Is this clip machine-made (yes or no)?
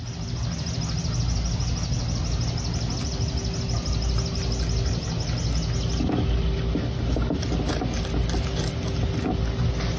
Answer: no